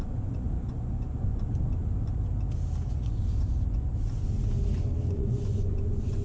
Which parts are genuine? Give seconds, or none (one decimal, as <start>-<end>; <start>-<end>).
1.3-2.9; 3.9-5.1